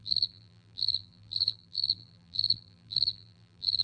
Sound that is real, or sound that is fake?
fake